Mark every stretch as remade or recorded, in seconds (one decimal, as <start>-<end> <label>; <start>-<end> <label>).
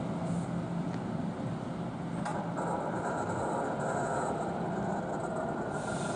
0.0-2.3 recorded; 2.3-5.2 remade; 5.2-6.2 recorded